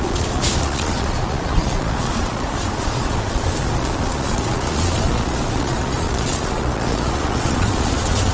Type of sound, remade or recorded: remade